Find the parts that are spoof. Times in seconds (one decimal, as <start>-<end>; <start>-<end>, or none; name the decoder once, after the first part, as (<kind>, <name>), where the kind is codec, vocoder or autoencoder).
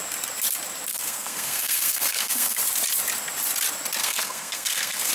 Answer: 0.9-2.6 (codec, SNAC); 4.0-5.1